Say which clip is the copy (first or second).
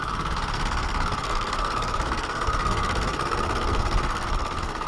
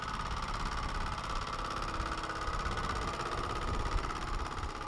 first